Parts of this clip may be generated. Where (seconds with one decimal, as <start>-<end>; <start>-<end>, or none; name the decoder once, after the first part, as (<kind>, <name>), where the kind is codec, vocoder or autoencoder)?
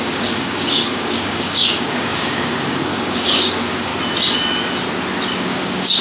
0.0-3.9 (codec, DAC); 5.4-6.0